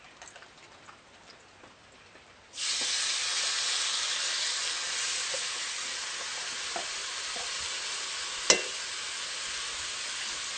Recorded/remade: recorded